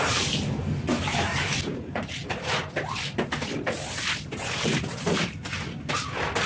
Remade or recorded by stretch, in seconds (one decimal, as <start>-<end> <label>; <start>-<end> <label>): 0.0-6.5 recorded